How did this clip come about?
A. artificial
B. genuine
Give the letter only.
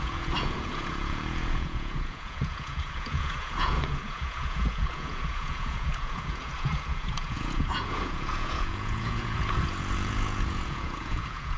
A